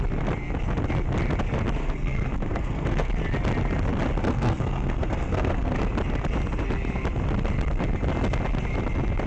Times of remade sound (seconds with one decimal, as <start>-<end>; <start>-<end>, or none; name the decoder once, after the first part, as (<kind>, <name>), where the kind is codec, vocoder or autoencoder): 1.8-3.1 (codec, SNAC); 4.2-5.8